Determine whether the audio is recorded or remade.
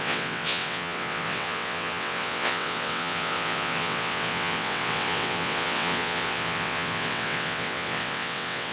remade